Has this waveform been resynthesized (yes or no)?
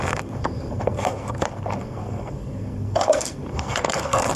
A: yes